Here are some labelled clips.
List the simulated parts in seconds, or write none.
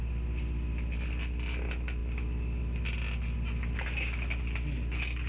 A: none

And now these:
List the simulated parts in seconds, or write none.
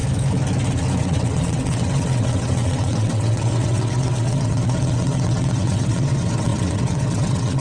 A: 1.0-7.6 (vocoder, WaveNeXt)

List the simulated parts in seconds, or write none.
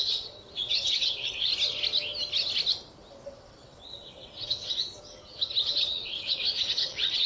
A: 0.0-1.5 (vocoder, WaveNeXt); 3.3-5.0; 5.6-7.3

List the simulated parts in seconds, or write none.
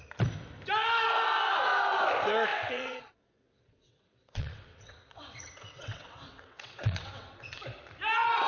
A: 2.5-7.6 (vocoder, WaveNeXt)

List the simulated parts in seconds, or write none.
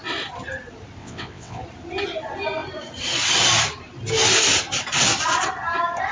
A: 1.0-1.6 (vocoder, WaveNeXt)